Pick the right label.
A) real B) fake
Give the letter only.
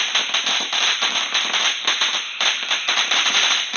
B